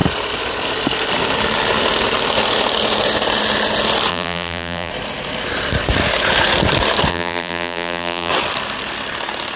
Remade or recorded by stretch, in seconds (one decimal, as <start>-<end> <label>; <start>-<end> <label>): 0.0-4.1 recorded; 4.1-4.9 remade; 4.9-7.1 recorded; 7.1-8.3 remade; 8.3-9.6 recorded